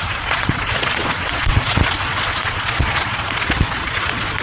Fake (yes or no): yes